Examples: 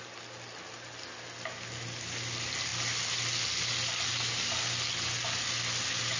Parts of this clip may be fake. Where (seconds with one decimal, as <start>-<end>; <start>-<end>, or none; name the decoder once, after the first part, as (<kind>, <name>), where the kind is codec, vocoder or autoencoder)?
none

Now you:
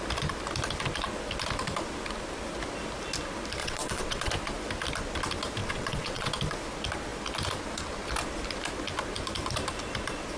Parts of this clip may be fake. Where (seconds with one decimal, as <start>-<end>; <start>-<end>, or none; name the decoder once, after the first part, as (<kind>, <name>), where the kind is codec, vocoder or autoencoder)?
3.6-4.3 (vocoder, WaveNeXt); 5.6-6.3

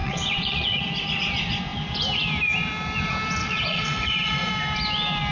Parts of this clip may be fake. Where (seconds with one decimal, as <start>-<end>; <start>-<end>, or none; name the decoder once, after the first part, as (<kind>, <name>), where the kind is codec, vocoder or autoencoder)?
0.0-0.8 (vocoder, WaveNeXt); 3.4-4.5

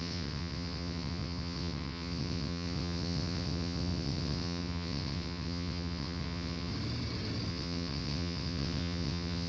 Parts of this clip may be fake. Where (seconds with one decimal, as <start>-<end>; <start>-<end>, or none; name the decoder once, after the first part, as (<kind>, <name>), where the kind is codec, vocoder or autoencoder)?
0.0-6.7 (vocoder, WaveNeXt); 7.5-9.5